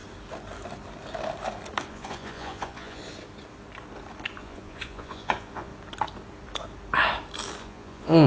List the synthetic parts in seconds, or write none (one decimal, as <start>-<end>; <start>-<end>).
1.9-3.0; 4.4-5.7; 7.6-8.3

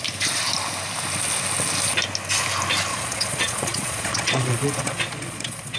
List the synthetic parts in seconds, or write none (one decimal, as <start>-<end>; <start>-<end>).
2.9-5.8

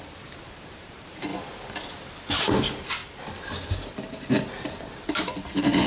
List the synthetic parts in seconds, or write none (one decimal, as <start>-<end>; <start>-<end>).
0.0-1.3; 2.4-3.0; 4.6-5.9

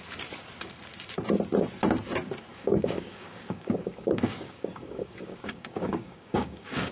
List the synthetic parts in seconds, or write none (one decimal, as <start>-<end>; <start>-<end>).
2.5-6.9

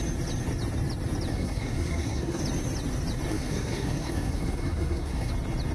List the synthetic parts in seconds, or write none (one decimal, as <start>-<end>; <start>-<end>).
1.3-2.4; 3.3-5.3

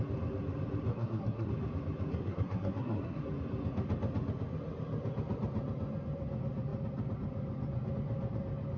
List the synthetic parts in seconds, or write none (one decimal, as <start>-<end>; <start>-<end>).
0.9-1.5; 2.1-3.2

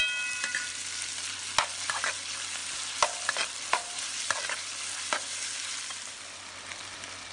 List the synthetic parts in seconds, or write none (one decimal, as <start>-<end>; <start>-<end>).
none

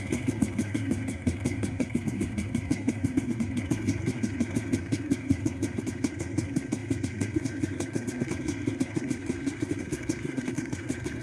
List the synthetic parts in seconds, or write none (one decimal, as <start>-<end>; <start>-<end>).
0.0-11.2